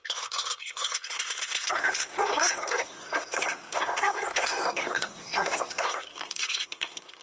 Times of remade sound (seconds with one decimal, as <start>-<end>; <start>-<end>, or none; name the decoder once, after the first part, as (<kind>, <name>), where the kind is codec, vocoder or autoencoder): 0.0-7.2 (codec, SNAC)